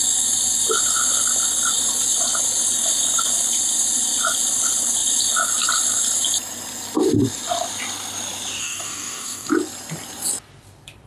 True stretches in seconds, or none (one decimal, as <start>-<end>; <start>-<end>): 0.0-8.6; 9.5-11.1